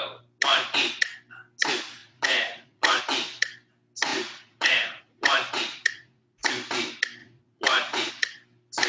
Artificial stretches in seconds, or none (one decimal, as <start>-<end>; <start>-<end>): 0.5-1.0; 2.0-3.0; 4.1-6.5; 7.2-8.1